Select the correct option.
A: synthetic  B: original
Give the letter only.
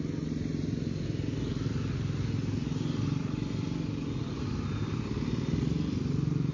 B